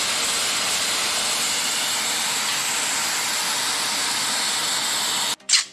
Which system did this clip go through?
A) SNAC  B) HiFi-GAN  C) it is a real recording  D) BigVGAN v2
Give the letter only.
C